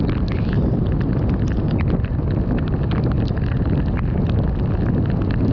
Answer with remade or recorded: recorded